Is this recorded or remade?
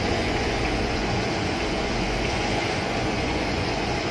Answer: remade